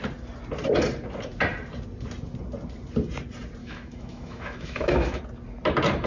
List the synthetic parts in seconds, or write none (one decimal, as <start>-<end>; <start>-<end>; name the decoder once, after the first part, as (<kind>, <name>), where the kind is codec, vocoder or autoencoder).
3.6-5.2 (autoencoder, DAC-VAE)